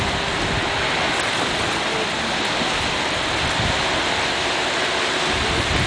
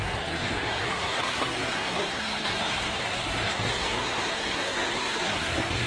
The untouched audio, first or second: first